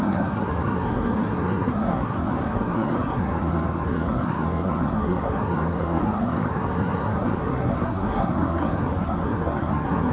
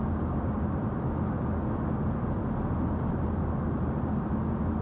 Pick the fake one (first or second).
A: first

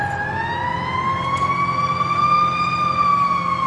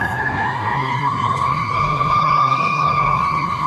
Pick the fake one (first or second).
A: second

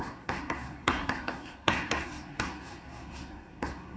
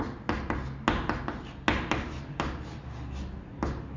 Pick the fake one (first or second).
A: first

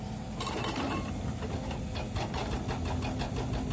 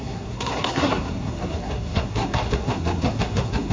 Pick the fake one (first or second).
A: second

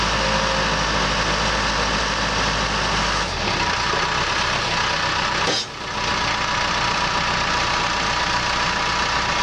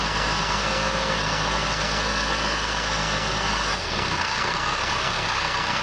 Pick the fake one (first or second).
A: second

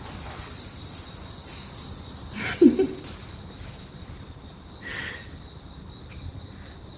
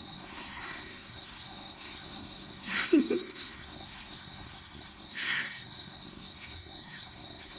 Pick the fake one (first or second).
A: second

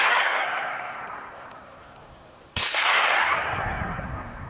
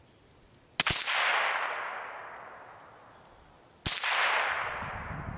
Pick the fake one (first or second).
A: first